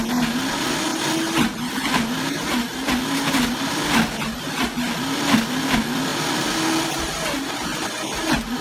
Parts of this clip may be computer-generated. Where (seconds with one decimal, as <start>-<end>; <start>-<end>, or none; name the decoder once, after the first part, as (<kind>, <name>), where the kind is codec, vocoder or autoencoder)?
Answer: none